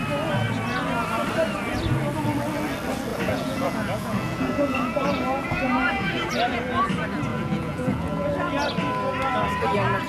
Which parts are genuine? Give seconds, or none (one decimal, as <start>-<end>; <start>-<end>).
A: 0.0-3.1; 6.3-7.3; 8.3-10.1